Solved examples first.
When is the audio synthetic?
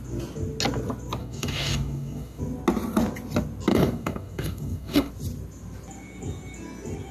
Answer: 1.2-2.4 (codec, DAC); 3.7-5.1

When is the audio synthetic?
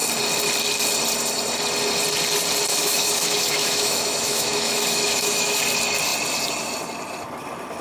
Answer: 2.7-5.6 (autoencoder, DAC-VAE)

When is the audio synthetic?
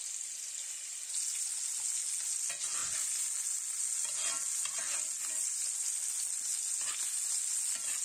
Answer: none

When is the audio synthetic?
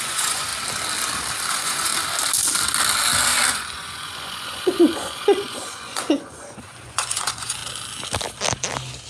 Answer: 0.0-0.5 (vocoder, Vocos); 1.5-1.9; 3.5-7.6